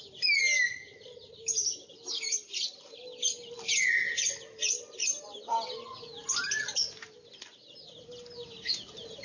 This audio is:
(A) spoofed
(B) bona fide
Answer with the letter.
B